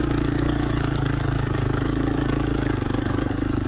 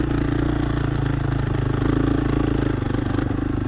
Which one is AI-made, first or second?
first